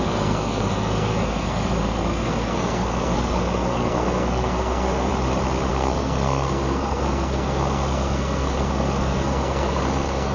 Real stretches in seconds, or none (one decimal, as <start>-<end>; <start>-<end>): 5.1-5.7